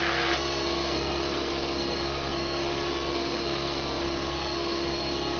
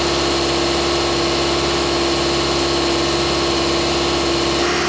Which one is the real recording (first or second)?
second